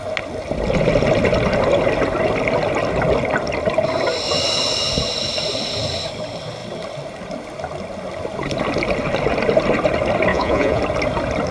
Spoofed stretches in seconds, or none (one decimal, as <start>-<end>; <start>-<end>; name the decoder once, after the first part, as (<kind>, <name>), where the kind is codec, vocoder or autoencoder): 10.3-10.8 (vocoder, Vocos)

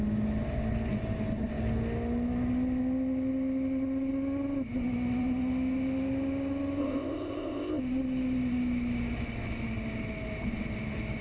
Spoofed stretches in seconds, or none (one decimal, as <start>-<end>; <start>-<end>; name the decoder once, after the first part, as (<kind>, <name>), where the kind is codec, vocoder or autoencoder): 6.8-7.8 (codec, ZipCodec)

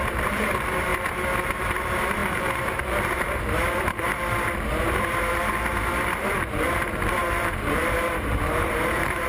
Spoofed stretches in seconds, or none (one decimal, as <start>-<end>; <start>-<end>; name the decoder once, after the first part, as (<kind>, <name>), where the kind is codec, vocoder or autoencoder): 0.0-0.9 (vocoder, BigVGAN v2); 1.5-9.3

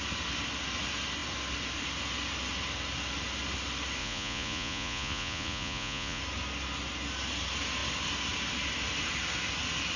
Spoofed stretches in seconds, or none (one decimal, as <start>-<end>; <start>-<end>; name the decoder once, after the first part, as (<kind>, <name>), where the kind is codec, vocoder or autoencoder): 4.0-6.2 (vocoder, Vocos)

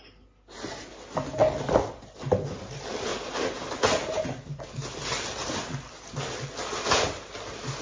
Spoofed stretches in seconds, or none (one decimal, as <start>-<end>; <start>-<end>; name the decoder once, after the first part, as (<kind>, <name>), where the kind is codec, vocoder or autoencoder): 3.1-4.6 (vocoder, BigVGAN v2)

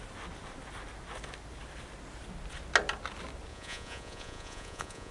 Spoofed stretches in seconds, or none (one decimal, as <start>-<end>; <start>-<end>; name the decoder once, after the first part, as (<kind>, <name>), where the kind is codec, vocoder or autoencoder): 3.5-5.1 (vocoder, Vocos)

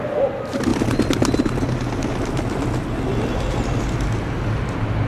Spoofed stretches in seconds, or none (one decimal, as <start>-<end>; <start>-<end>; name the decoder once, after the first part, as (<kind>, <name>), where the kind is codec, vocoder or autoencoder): none

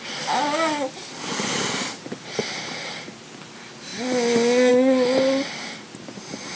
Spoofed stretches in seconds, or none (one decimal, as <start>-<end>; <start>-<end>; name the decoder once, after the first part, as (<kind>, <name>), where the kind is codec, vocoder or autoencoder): none